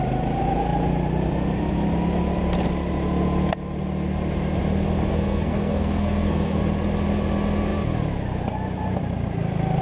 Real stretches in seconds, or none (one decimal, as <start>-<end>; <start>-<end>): 0.0-5.1; 6.6-9.8